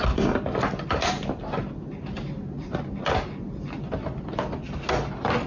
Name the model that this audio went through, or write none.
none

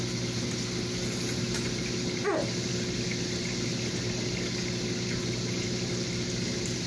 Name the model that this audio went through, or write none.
none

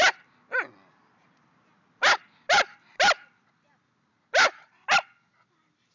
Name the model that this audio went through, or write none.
none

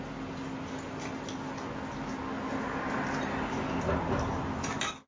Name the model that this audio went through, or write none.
none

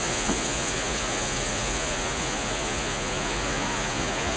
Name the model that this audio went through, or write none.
vocoder, Vocos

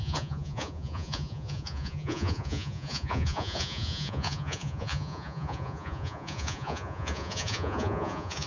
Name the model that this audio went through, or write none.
vocoder, Vocos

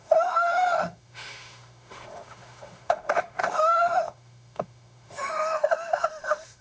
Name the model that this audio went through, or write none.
autoencoder, DAC-VAE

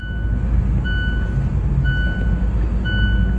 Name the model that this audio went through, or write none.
none